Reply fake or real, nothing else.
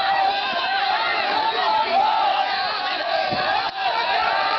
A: fake